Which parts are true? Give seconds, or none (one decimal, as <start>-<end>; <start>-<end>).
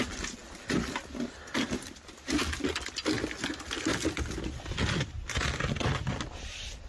0.0-6.9